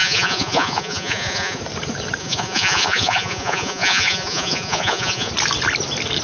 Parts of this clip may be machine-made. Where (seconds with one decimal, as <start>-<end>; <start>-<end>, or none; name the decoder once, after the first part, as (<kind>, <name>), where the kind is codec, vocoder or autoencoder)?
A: 0.0-1.6 (vocoder, Vocos); 2.2-5.3